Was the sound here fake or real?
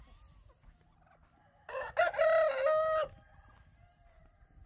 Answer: real